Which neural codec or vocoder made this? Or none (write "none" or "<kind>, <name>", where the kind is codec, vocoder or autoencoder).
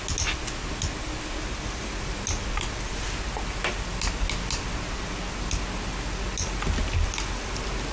none